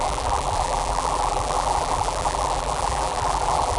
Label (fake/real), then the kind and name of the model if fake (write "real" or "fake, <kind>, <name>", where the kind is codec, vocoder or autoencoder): fake, vocoder, BigVGAN v2